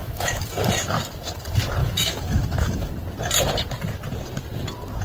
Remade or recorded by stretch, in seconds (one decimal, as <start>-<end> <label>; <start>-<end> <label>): 0.0-0.5 remade; 0.5-1.8 recorded; 1.8-2.9 remade; 2.9-5.0 recorded